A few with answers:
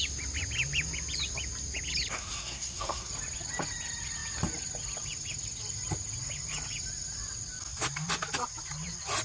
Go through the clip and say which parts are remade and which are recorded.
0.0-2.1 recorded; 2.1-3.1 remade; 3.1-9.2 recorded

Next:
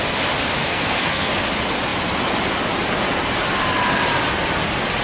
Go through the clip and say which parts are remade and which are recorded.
0.0-0.6 recorded; 0.6-1.3 remade; 1.3-5.0 recorded

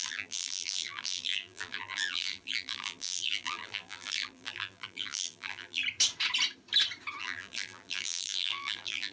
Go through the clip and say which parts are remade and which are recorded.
0.0-5.8 remade; 5.8-7.2 recorded; 7.2-9.1 remade

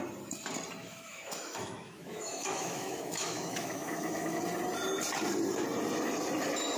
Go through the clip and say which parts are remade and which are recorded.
0.0-0.8 recorded; 0.8-4.4 remade; 4.4-6.8 recorded

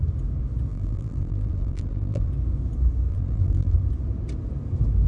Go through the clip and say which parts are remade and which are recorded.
0.0-0.7 recorded; 0.7-2.3 remade; 2.3-3.1 recorded; 3.1-3.8 remade; 3.8-5.1 recorded